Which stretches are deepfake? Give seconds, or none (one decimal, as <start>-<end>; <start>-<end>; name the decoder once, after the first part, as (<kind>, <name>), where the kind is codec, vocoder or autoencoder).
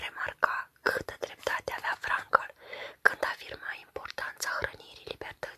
0.7-2.7 (vocoder, BigVGAN v2); 3.8-4.6